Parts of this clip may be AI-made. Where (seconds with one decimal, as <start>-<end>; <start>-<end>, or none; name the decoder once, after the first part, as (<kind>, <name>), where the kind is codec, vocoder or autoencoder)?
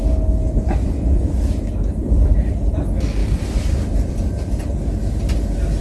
2.0-2.5 (vocoder, BigVGAN v2); 3.2-4.3